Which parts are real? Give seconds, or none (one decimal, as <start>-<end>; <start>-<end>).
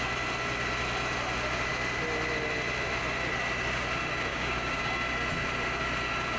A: 0.0-4.3; 4.9-6.4